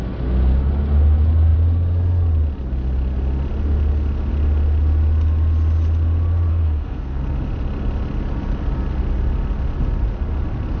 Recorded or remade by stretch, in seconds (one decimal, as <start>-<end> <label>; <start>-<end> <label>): 0.0-6.5 recorded; 6.5-7.2 remade; 7.2-10.8 recorded